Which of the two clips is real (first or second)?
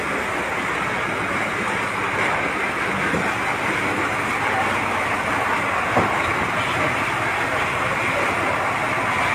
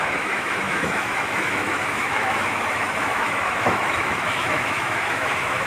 first